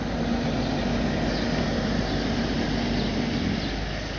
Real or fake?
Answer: real